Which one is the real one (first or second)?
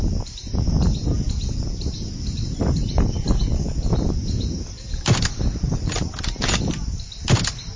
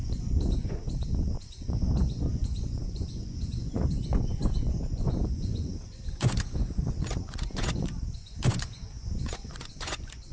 first